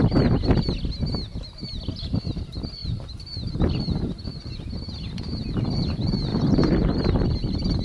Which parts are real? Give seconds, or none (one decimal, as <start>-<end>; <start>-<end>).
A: 0.0-2.8; 3.7-6.3